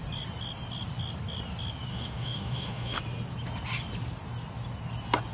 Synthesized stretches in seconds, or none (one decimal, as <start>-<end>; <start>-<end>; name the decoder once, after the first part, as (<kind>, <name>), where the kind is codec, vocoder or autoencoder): 1.9-3.0 (autoencoder, DAC-VAE)